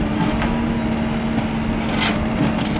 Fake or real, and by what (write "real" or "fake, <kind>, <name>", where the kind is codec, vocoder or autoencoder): real